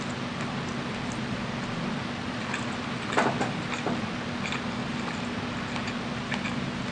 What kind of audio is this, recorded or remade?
recorded